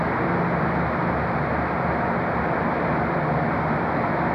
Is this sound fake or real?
real